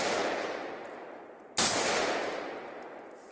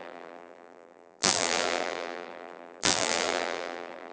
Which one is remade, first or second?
second